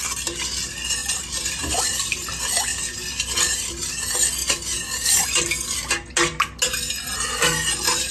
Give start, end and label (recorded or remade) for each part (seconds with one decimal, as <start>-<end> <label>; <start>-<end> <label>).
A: 0.0-1.0 recorded; 1.0-1.6 remade; 1.6-8.1 recorded

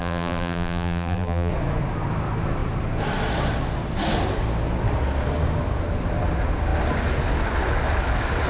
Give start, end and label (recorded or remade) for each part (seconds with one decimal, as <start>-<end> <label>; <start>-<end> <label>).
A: 0.0-1.5 remade; 1.5-8.5 recorded